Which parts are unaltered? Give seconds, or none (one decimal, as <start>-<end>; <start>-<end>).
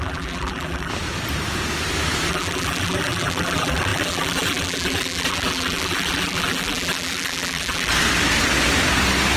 0.9-2.3; 7.9-9.4